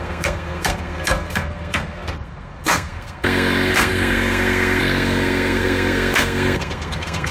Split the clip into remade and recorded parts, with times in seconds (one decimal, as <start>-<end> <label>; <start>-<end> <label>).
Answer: 0.0-7.3 remade